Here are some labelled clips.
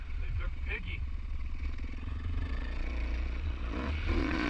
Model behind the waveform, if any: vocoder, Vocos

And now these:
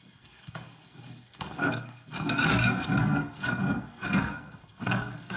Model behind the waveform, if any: codec, SNAC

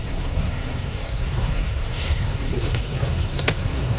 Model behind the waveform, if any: codec, SNAC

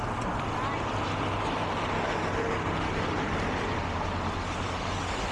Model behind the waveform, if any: none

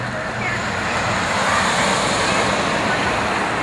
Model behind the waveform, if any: none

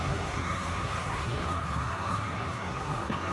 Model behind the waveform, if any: codec, SNAC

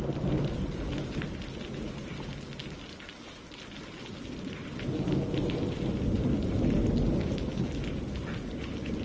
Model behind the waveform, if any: none